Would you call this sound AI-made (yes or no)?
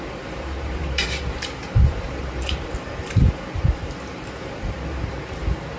yes